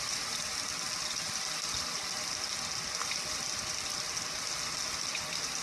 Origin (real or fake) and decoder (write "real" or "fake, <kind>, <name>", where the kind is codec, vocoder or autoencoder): real